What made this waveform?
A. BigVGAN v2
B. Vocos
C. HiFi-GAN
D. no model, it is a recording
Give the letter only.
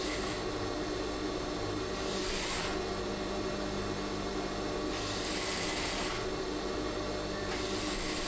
D